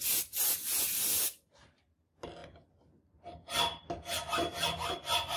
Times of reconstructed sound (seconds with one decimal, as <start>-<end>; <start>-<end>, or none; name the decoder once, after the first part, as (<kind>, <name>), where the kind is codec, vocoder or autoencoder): 0.9-1.5 (vocoder, BigVGAN v2)